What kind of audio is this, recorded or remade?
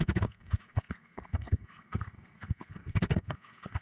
remade